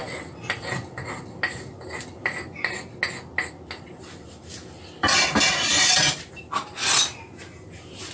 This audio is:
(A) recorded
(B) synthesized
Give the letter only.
A